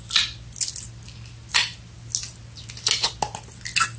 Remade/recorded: recorded